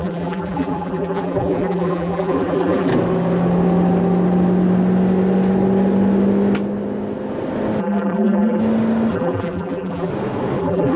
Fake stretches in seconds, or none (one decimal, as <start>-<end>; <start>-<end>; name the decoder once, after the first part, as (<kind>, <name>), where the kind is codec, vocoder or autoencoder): 0.0-2.9 (vocoder, BigVGAN v2); 7.8-8.6; 9.1-10.1; 10.6-11.0